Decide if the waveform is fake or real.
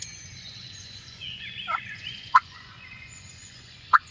fake